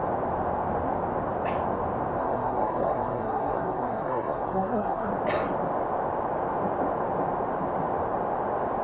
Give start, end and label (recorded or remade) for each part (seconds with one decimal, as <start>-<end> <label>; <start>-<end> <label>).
0.0-2.2 recorded; 2.2-5.1 remade; 5.1-8.8 recorded